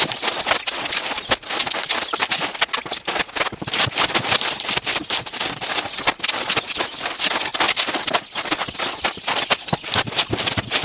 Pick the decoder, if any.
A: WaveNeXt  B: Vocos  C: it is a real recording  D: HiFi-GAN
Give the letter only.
C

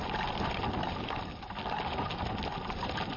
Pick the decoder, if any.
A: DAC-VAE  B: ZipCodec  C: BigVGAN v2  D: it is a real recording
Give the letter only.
D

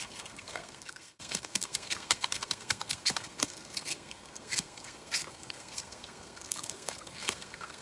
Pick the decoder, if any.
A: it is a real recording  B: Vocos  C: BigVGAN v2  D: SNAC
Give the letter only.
D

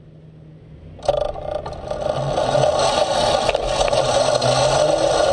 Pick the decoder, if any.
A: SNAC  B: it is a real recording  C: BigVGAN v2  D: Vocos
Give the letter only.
B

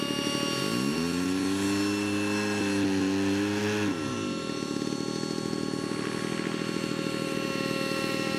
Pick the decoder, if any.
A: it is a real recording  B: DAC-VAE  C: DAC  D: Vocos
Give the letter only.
A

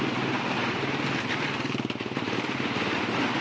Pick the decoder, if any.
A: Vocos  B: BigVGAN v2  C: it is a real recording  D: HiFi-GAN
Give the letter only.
B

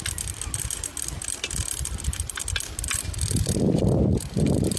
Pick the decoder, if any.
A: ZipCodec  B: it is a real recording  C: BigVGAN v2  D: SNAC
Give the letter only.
B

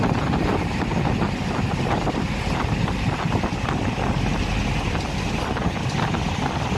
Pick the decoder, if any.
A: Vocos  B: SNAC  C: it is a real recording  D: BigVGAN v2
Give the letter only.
C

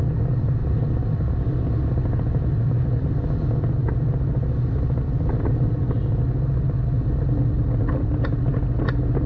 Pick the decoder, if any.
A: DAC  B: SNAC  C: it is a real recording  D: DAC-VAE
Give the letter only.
C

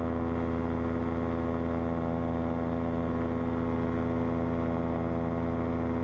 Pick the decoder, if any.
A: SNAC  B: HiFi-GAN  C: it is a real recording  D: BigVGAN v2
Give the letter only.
C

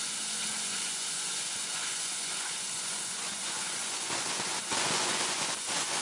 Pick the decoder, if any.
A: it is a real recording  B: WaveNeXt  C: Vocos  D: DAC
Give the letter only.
C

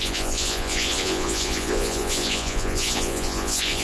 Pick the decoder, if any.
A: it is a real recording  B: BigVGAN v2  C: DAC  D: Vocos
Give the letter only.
D